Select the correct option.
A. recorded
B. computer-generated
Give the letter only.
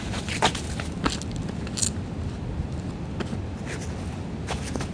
A